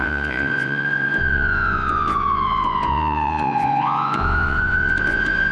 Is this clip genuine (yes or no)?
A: no